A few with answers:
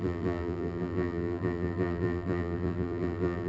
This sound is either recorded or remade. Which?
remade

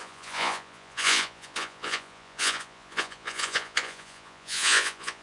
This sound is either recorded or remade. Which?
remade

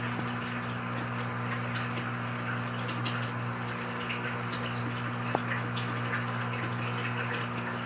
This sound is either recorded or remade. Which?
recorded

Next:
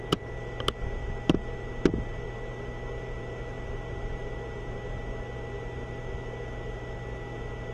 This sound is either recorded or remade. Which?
recorded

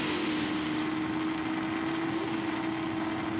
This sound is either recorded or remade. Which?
recorded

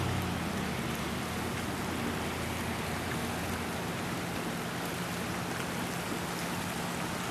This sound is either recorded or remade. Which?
recorded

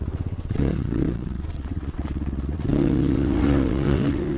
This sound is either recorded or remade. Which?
remade